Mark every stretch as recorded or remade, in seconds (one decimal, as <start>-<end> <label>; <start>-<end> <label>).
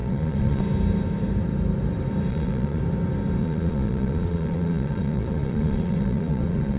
0.0-0.6 remade; 0.6-2.3 recorded; 2.3-2.8 remade; 2.8-3.4 recorded; 3.4-6.8 remade